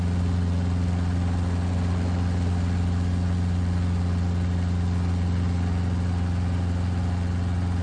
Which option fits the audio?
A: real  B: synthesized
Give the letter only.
A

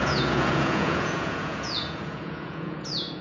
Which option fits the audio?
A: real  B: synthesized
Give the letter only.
B